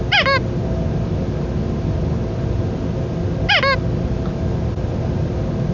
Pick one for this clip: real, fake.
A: real